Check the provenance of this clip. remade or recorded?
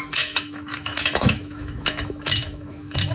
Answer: remade